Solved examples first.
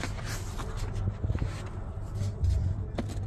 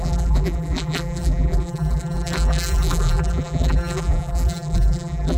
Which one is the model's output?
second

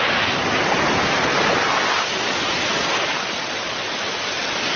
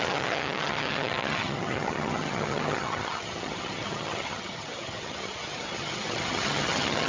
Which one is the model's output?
second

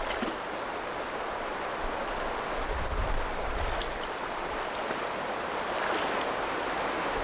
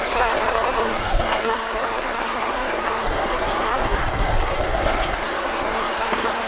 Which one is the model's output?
second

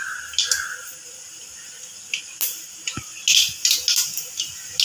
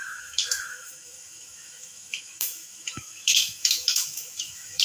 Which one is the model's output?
second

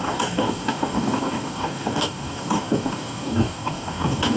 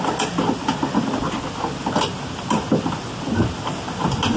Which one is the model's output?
first